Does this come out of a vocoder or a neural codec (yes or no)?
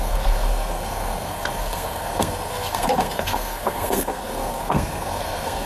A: yes